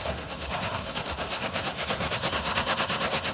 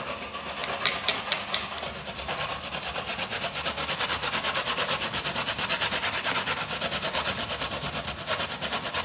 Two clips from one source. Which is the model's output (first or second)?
first